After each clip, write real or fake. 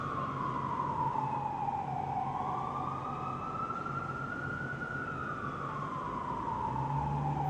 real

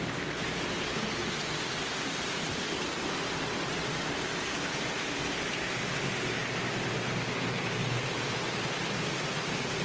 real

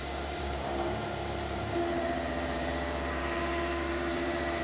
fake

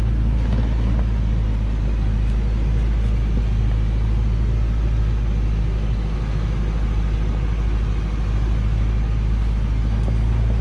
real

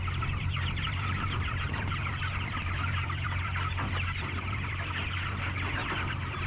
fake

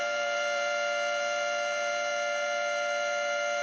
fake